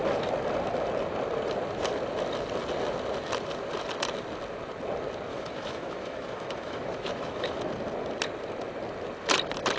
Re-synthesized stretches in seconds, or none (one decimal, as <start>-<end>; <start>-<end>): 5.3-7.6